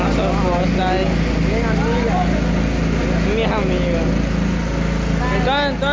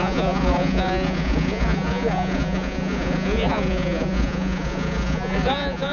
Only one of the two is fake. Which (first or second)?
second